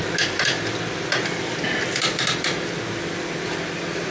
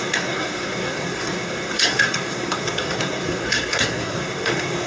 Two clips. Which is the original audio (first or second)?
first